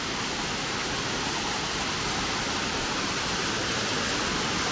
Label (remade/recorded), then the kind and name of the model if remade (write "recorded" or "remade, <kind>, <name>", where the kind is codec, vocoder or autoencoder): recorded